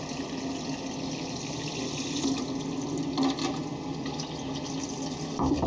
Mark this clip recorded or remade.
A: recorded